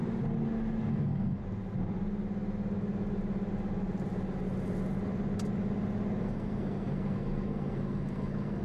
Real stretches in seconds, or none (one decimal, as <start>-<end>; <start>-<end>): 0.0-0.9; 1.4-6.2